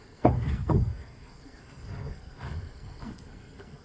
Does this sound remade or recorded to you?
remade